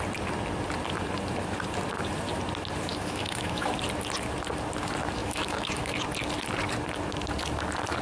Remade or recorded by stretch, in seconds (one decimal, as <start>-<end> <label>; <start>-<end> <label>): 0.0-2.9 recorded; 2.9-3.7 remade; 3.7-5.2 recorded; 5.2-5.9 remade; 5.9-8.0 recorded